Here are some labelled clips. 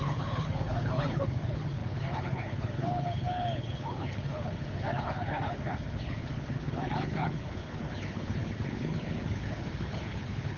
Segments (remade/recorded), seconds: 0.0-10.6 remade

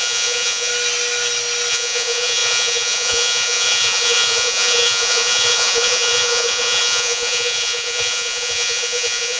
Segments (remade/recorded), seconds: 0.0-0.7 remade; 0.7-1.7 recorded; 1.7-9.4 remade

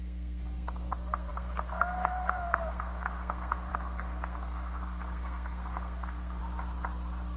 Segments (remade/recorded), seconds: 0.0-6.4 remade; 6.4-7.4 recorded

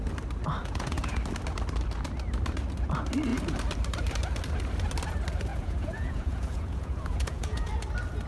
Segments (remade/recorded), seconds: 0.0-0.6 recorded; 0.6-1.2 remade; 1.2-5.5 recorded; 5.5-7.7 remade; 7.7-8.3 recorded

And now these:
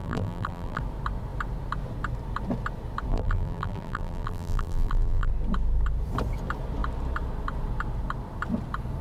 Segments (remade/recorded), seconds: 0.0-0.8 remade; 0.8-3.1 recorded; 3.1-5.3 remade; 5.3-9.0 recorded

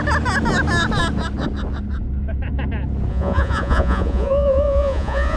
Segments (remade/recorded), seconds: 0.0-3.1 recorded; 3.1-5.4 remade

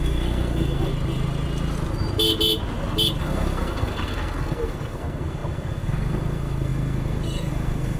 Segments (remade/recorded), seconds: 0.0-0.9 remade; 0.9-3.2 recorded; 3.2-8.0 remade